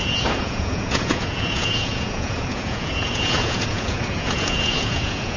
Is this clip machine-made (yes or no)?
yes